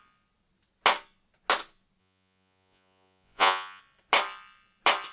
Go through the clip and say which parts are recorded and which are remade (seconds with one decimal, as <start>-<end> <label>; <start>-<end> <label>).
0.0-2.0 recorded; 2.0-3.8 remade; 3.8-5.1 recorded

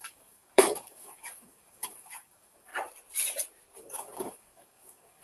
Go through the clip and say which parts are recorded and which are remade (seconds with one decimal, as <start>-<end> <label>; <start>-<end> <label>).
0.0-2.7 remade; 2.7-3.8 recorded; 3.8-5.2 remade

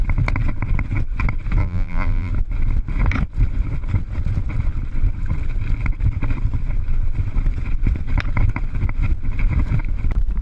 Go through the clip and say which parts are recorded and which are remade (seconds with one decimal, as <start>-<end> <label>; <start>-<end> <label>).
0.0-1.6 recorded; 1.6-2.3 remade; 2.3-10.4 recorded

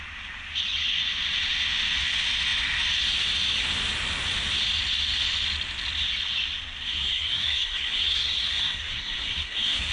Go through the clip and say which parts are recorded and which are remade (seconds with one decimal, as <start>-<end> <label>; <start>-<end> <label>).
0.0-6.9 recorded; 6.9-9.9 remade

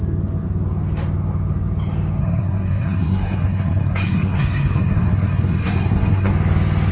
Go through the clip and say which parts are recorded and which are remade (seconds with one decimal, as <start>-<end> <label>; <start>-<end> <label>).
0.0-2.2 recorded; 2.2-6.3 remade; 6.3-6.9 recorded